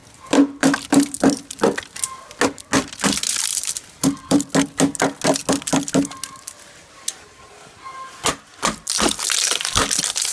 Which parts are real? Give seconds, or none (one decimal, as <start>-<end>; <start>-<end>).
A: 2.3-3.5; 4.5-10.3